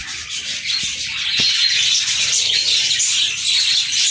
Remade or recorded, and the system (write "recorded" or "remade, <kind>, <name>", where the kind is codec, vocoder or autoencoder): recorded